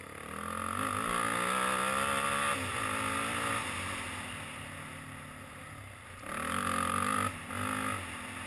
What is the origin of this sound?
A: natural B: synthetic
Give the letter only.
A